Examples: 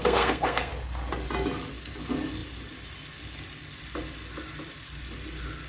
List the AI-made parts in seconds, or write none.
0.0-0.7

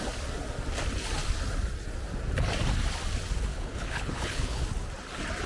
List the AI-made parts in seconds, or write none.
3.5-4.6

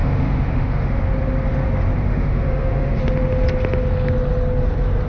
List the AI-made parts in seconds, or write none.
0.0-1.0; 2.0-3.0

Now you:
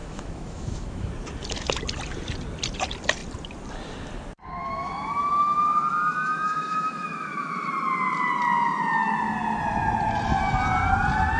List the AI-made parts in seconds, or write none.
0.0-1.1; 4.6-7.7

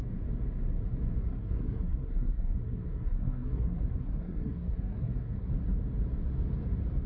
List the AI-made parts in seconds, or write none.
1.3-5.5

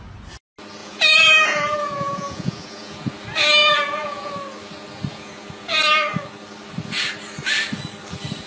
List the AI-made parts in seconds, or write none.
0.8-3.1; 3.6-4.3; 5.1-5.8

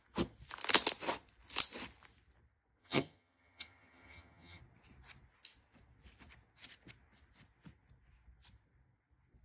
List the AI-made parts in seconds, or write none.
2.8-4.6

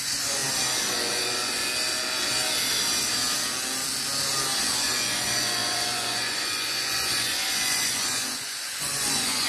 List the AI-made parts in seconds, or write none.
0.0-0.4; 0.9-1.6; 4.6-9.5